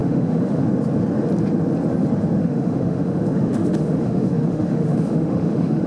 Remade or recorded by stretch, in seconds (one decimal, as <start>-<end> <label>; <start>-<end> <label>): 0.0-0.6 remade; 0.6-2.4 recorded; 2.4-5.9 remade